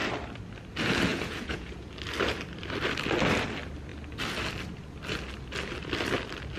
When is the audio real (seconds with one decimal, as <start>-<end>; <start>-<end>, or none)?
0.0-1.1; 1.9-6.6